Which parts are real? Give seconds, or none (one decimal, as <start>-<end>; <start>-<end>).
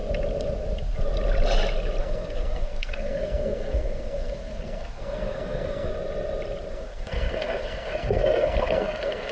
0.0-2.0; 5.9-6.7